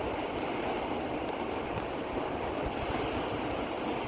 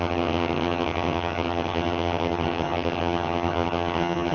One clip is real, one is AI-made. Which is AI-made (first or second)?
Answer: second